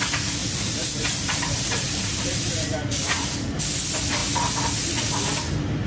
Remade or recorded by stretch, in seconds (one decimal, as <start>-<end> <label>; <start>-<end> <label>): 0.0-0.4 recorded; 0.4-3.7 remade; 3.7-5.9 recorded

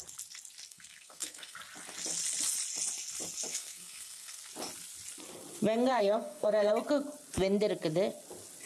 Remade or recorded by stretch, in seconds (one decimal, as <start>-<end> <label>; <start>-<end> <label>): 0.0-0.7 recorded; 0.7-1.6 remade; 1.6-3.5 recorded; 3.5-4.4 remade; 4.4-5.9 recorded; 5.9-6.7 remade; 6.7-8.7 recorded

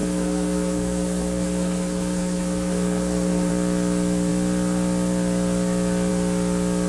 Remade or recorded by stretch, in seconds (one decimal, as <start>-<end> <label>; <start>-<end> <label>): 0.0-3.5 remade; 3.5-6.9 recorded

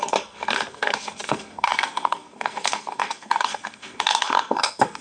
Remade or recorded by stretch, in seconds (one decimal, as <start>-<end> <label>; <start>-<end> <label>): 0.0-5.0 remade

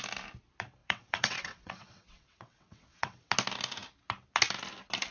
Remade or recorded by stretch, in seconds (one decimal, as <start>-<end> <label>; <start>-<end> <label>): 0.0-0.8 recorded; 0.8-3.3 remade; 3.3-5.1 recorded